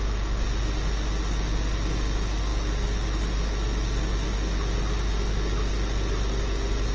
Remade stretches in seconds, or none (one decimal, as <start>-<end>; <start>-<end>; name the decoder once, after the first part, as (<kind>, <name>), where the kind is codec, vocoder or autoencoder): none